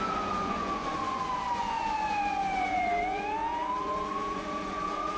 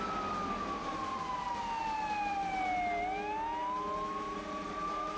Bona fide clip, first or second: second